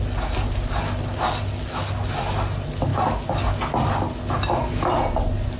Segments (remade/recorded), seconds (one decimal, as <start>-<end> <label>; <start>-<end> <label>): 0.0-5.6 recorded